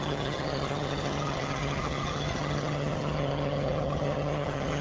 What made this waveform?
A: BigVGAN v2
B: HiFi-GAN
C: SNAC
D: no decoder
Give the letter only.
B